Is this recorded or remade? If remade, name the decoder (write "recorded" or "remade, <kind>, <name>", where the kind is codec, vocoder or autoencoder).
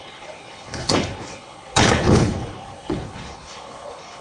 remade, codec, HILCodec